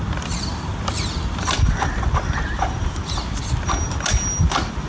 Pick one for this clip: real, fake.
real